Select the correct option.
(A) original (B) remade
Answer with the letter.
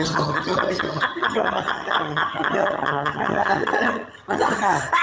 B